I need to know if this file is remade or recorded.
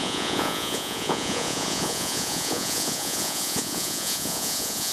remade